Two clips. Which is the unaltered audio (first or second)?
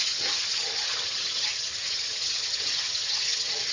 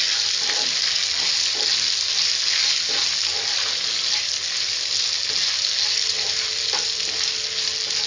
second